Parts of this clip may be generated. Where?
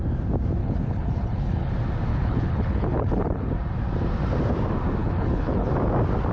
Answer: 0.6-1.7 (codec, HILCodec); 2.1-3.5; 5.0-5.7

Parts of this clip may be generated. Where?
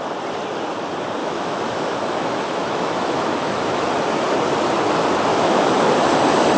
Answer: 1.2-3.9 (autoencoder, DAC-VAE); 5.3-5.9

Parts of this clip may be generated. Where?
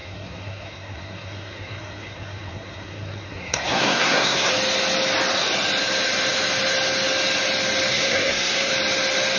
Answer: 0.0-4.5 (codec, SNAC); 7.9-8.7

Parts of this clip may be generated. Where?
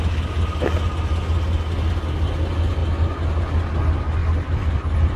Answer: 4.2-5.2 (vocoder, BigVGAN v2)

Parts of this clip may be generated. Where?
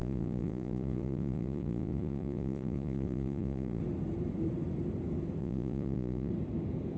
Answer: 0.0-3.8 (vocoder, Vocos); 5.4-6.3